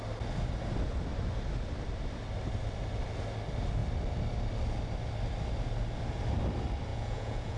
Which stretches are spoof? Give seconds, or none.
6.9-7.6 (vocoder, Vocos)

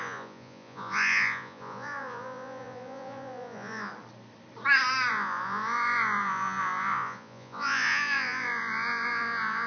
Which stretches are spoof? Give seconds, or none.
0.0-3.9 (vocoder, Vocos); 5.1-9.7

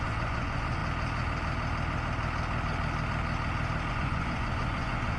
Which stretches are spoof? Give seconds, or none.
0.0-0.8 (vocoder, Vocos); 3.9-5.2

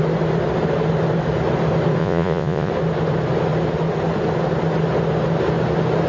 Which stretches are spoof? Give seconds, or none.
2.0-2.7 (vocoder, Vocos)

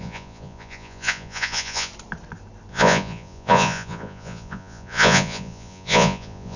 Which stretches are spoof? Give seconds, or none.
0.0-1.9 (vocoder, Vocos); 2.7-6.6

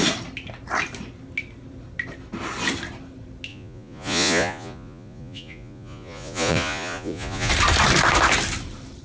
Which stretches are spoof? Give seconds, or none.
3.5-7.5 (vocoder, Vocos)

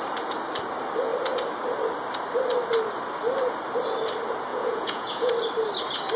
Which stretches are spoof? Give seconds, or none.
4.5-5.3 (vocoder, Vocos)